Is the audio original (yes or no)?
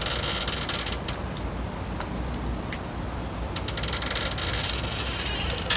yes